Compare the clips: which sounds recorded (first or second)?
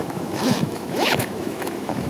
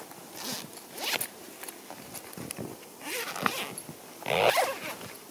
second